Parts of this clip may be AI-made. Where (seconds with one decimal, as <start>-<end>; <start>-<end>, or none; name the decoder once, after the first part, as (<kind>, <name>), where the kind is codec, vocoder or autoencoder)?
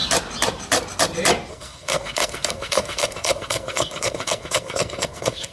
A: 1.5-5.5 (codec, SNAC)